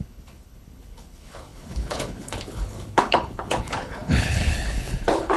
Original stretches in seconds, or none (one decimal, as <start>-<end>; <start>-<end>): none

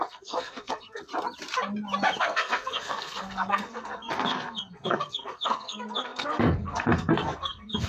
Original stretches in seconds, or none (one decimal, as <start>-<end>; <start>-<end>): 1.1-2.2

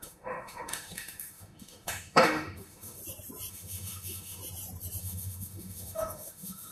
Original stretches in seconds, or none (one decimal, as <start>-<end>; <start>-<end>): 3.0-3.5; 4.4-5.0

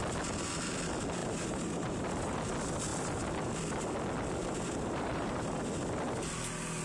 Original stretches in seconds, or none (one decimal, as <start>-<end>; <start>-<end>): 0.0-1.2; 2.4-4.4; 5.6-6.8